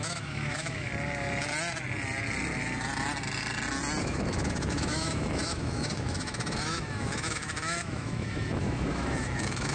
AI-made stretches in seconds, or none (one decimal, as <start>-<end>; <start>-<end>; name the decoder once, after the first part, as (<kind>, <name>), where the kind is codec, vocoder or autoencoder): 0.0-0.9 (autoencoder, DAC-VAE); 4.0-9.7